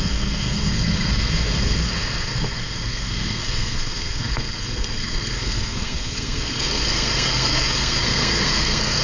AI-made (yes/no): yes